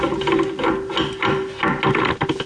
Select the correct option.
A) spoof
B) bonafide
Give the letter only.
B